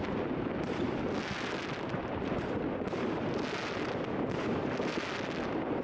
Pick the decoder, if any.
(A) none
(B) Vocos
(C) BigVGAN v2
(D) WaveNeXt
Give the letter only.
A